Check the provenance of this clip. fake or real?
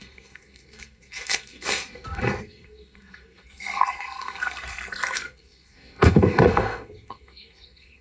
fake